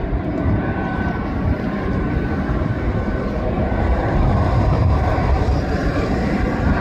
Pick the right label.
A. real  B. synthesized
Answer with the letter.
B